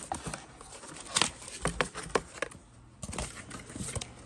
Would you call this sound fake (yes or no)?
no